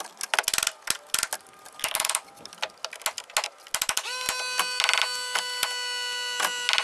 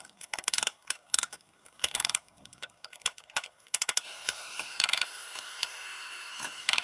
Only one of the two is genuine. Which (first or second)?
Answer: first